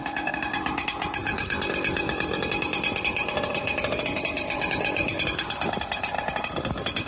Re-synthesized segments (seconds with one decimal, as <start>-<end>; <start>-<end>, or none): none